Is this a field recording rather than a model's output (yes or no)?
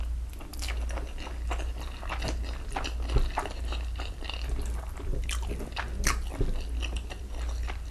yes